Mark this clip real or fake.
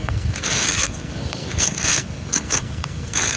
fake